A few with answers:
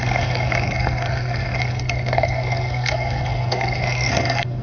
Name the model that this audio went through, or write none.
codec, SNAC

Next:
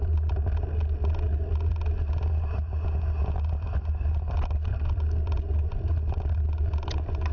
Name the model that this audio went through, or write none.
none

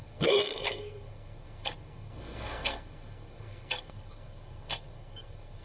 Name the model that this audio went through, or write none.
codec, SNAC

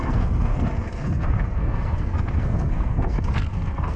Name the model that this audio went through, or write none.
codec, SNAC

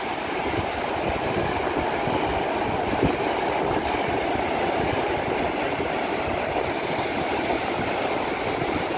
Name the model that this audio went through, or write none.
none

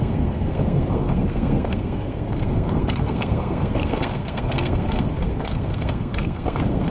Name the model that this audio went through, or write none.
codec, SNAC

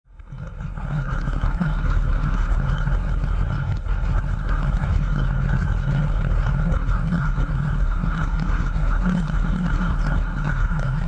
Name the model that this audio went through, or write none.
codec, SNAC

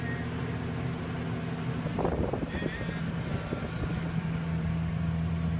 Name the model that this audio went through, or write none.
none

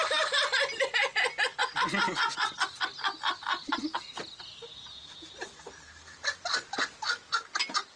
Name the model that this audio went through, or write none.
none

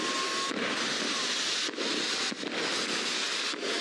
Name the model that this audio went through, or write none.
none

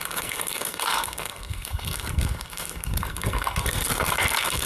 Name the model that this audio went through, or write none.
codec, SNAC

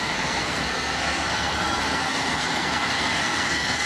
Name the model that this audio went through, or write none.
codec, SNAC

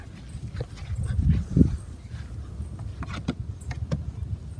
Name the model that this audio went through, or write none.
none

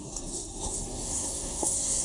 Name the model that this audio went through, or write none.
codec, SNAC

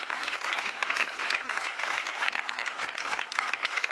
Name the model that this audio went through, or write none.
codec, SNAC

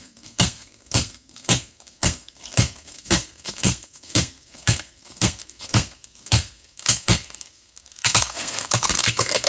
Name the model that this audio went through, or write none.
codec, SNAC